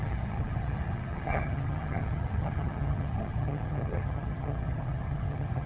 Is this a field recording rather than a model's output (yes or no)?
no